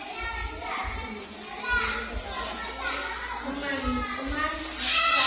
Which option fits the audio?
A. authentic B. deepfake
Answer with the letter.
A